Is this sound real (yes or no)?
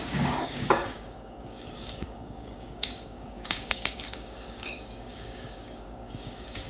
no